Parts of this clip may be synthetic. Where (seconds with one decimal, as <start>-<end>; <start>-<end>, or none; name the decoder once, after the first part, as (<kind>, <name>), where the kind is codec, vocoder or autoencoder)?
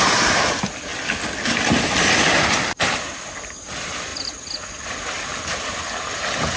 none